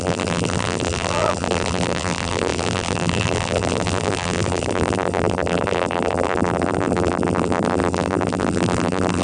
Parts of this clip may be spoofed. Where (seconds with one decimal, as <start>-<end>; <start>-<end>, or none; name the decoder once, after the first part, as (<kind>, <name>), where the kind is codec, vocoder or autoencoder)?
0.0-9.2 (vocoder, BigVGAN v2)